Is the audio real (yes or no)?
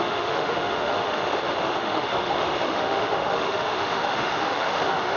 no